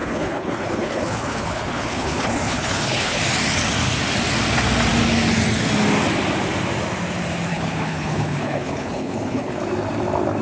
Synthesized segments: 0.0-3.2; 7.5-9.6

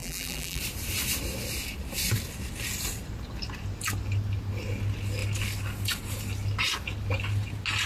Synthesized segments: 0.0-0.6

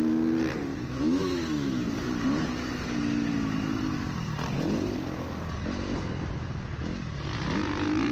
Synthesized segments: 0.7-2.0

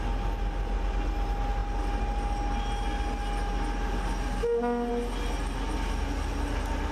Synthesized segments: none

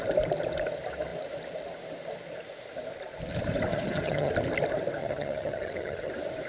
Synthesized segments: 3.7-4.3; 5.0-6.1

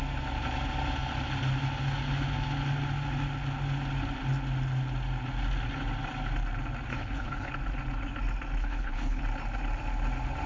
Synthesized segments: 6.9-7.5; 8.6-9.2

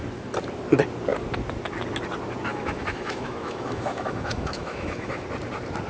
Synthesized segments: 2.5-5.2